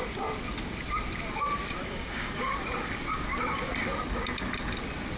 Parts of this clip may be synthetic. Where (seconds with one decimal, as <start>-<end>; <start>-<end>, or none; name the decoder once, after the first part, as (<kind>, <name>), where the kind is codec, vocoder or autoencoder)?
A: 1.8-2.5 (codec, DAC)